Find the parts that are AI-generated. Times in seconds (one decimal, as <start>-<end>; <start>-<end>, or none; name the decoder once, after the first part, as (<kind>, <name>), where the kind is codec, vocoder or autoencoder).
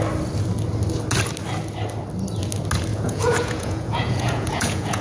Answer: 2.9-5.0 (vocoder, Vocos)